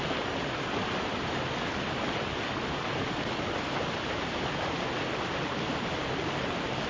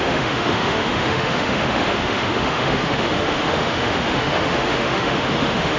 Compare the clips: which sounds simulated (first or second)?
second